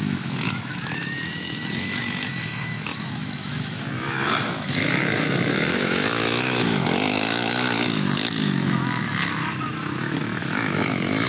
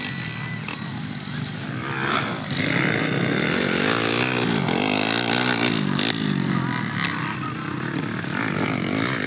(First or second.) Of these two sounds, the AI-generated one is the first